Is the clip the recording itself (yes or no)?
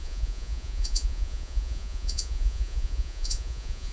no